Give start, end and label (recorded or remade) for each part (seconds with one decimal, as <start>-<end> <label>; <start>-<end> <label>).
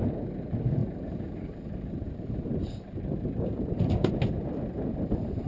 0.0-0.8 recorded; 0.8-4.1 remade; 4.1-5.5 recorded